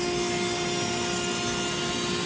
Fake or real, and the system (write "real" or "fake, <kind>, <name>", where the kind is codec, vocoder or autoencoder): real